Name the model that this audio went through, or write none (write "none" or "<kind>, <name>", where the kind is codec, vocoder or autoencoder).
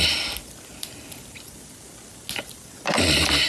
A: none